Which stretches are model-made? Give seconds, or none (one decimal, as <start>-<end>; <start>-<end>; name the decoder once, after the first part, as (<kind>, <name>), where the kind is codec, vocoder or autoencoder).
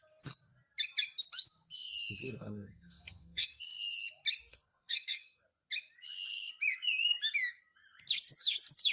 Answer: 2.2-3.8 (codec, SNAC); 4.5-5.4